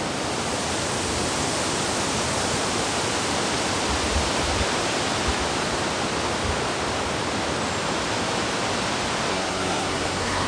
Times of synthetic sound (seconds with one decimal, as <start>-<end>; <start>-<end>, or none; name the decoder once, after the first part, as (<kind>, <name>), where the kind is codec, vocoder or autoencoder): 9.3-10.5 (codec, SNAC)